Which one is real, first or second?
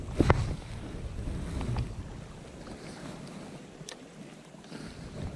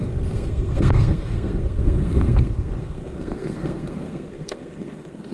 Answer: first